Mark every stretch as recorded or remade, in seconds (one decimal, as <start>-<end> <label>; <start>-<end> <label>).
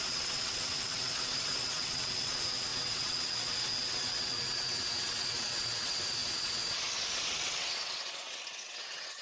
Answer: 0.0-9.2 remade